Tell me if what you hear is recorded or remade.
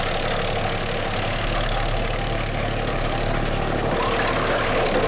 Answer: recorded